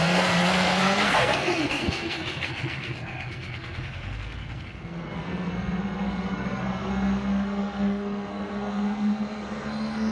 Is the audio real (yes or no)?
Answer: no